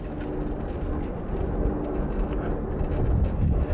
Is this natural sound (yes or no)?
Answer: yes